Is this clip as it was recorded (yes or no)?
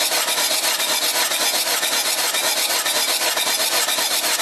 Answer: yes